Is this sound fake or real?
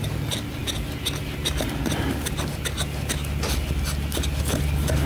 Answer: real